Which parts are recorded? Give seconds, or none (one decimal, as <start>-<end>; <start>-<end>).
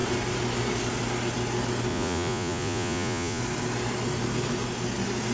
0.0-1.9; 3.4-5.3